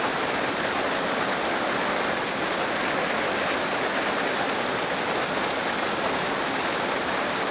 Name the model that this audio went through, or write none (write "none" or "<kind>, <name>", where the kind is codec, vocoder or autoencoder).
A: none